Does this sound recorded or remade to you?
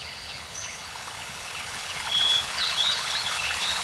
remade